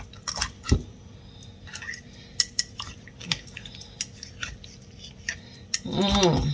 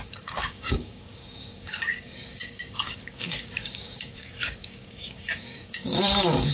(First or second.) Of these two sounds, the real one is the first